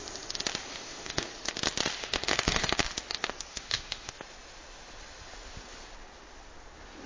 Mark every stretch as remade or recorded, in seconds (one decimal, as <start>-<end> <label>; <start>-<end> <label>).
0.0-0.7 recorded; 0.7-1.3 remade; 1.3-2.0 recorded; 2.0-2.7 remade; 2.7-3.5 recorded; 3.5-4.1 remade; 4.1-7.1 recorded